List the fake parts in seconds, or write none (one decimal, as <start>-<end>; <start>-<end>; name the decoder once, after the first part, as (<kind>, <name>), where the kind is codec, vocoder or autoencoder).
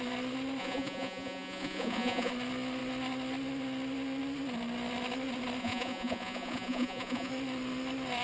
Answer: 0.6-2.3 (vocoder, Vocos); 5.6-7.3